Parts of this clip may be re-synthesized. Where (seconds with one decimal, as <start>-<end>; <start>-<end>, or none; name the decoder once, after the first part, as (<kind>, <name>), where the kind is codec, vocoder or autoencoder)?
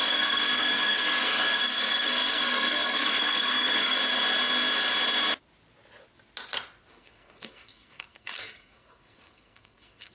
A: 0.0-4.0 (codec, SNAC); 6.9-10.1